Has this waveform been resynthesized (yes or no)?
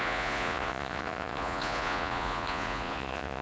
yes